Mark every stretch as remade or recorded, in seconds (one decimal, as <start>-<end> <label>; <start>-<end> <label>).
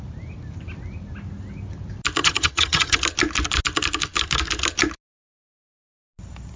0.0-2.2 recorded; 2.2-3.0 remade; 3.0-6.6 recorded